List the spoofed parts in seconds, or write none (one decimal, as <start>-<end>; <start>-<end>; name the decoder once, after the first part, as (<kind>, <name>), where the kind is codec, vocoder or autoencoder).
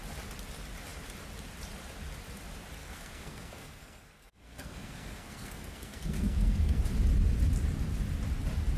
2.8-6.8 (codec, SNAC)